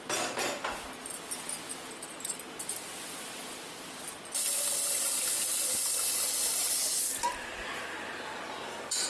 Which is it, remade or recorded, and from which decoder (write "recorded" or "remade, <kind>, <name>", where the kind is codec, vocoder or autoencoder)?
recorded